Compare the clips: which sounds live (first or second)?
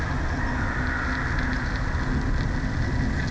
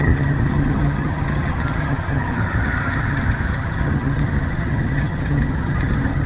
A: first